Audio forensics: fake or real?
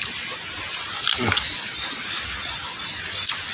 real